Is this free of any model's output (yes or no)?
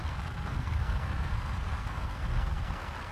no